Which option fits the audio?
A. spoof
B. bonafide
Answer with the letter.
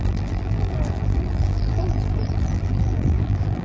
A